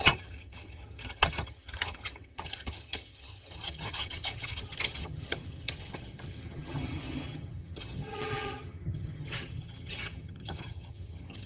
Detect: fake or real fake